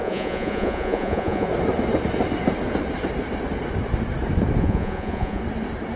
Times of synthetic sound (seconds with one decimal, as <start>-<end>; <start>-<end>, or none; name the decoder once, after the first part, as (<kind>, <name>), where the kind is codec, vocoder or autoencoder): 0.0-1.5 (vocoder, Vocos); 4.6-5.4